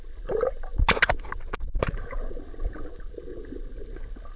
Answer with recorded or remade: recorded